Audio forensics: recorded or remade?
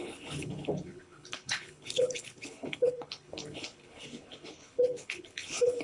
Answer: remade